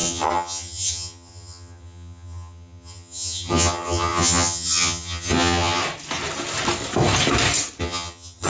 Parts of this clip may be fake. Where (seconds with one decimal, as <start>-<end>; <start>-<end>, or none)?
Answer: 0.0-5.8; 7.8-8.5